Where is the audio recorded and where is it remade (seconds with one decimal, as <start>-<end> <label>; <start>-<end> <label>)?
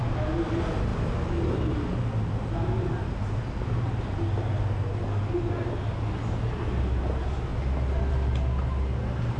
0.0-9.4 recorded